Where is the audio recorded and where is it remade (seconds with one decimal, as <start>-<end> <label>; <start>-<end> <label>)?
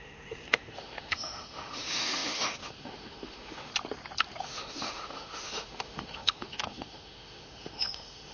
0.0-3.7 remade; 3.7-4.4 recorded; 4.4-8.3 remade